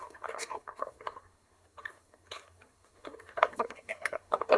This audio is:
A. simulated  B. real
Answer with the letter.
A